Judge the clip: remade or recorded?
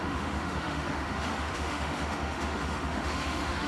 remade